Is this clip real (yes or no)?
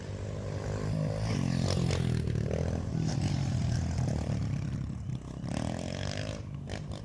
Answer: yes